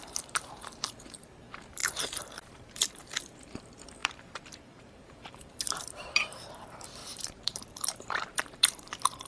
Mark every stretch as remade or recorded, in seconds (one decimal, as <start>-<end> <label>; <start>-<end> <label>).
0.0-9.3 remade